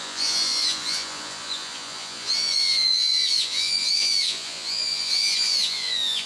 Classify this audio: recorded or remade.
remade